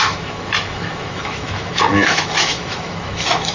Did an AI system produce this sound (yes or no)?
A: yes